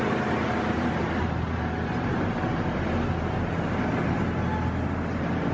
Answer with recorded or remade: recorded